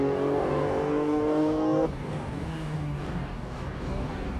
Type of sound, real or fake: fake